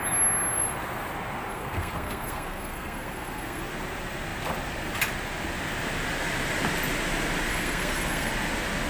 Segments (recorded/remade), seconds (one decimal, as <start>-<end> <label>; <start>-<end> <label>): 0.0-1.5 recorded; 1.5-3.6 remade; 3.6-7.5 recorded; 7.5-8.3 remade; 8.3-8.9 recorded